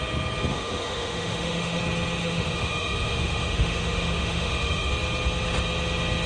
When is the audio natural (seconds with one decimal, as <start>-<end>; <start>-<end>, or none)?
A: 0.0-0.5; 1.8-2.2; 4.9-6.3